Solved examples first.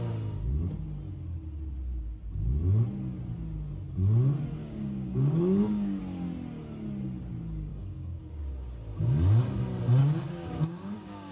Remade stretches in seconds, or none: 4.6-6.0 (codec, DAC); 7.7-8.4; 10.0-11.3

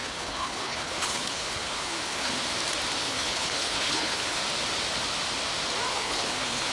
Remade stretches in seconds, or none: 0.0-2.4 (codec, HILCodec); 3.0-4.4; 5.9-6.7